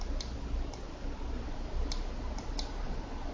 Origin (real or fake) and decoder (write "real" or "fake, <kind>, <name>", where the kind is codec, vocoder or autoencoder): real